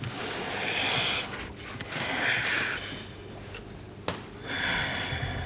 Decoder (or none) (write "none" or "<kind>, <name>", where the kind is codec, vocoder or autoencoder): none